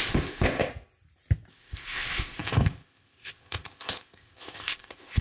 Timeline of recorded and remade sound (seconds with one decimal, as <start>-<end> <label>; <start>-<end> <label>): 0.0-0.7 remade; 0.7-1.5 recorded; 1.5-5.2 remade

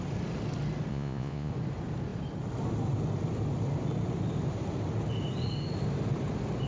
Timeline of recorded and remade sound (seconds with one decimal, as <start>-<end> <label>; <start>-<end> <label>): 0.0-0.9 recorded; 0.9-1.5 remade; 1.5-6.7 recorded

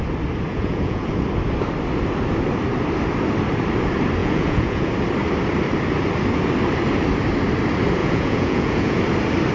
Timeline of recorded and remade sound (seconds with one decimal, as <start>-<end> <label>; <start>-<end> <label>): 0.0-0.5 recorded; 0.5-1.1 remade; 1.1-4.2 recorded; 4.2-4.9 remade; 4.9-8.0 recorded; 8.0-9.0 remade; 9.0-9.5 recorded

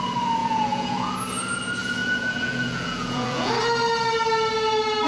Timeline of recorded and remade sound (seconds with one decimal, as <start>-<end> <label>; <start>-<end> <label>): 0.0-0.4 recorded; 0.4-1.1 remade; 1.1-1.8 recorded; 1.8-3.5 remade; 3.5-5.1 recorded